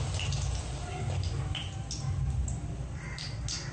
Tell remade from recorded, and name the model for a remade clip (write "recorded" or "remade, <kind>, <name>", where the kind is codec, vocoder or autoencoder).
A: recorded